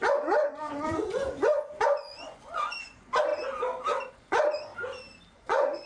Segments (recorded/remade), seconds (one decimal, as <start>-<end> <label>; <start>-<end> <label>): 0.0-3.3 remade; 3.3-4.1 recorded; 4.1-4.7 remade; 4.7-5.3 recorded; 5.3-5.9 remade